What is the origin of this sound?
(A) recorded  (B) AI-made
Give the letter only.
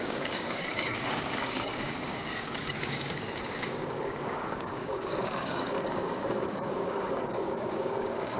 B